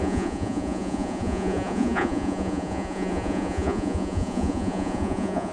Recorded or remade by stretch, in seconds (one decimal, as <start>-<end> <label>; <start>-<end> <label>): 0.0-5.5 remade